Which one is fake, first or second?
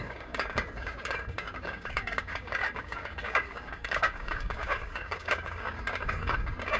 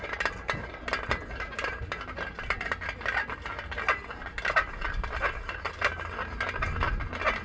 first